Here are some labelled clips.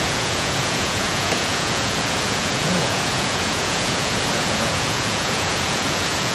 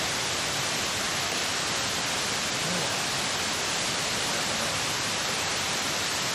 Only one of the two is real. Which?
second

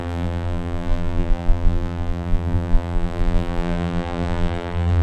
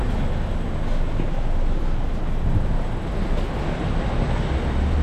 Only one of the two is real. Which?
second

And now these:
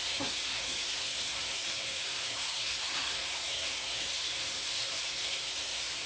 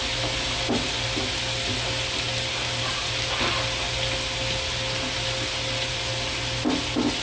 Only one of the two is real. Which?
second